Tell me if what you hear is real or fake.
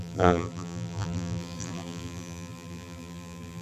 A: fake